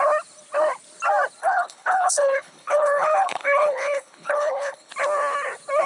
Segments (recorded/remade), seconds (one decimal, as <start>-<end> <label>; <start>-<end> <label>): 0.0-1.4 recorded; 1.4-4.9 remade; 4.9-5.9 recorded